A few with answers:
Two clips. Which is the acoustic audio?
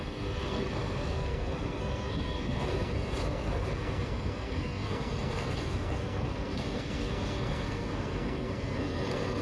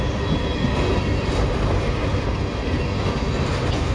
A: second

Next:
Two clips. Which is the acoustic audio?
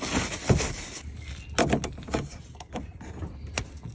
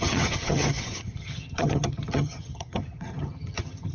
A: first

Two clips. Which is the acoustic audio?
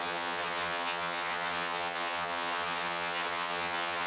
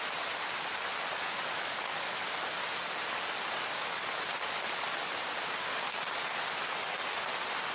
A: second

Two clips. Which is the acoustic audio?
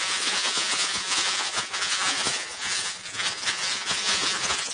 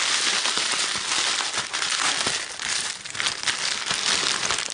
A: second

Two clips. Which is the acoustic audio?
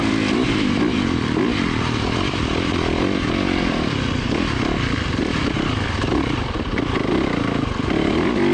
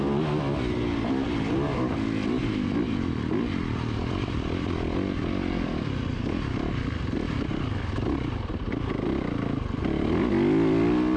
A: second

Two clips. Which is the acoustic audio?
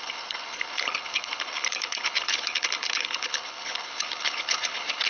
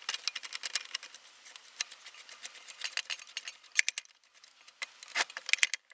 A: second